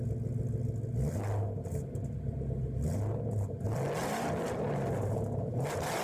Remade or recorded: recorded